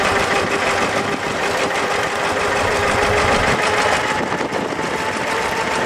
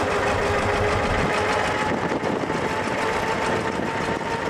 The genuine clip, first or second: second